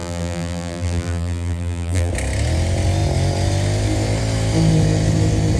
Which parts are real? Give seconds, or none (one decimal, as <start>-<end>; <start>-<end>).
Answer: 2.1-5.6